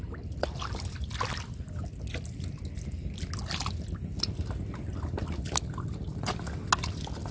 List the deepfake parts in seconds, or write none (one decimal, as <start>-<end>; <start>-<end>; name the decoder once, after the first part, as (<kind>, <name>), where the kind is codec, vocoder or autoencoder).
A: none